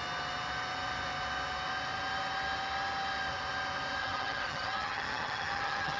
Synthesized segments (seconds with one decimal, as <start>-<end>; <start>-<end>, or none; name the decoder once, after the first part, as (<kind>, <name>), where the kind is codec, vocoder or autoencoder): 4.0-6.0 (vocoder, HiFi-GAN)